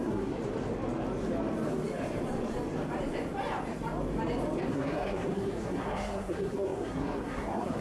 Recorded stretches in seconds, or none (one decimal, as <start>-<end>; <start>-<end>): 0.4-4.7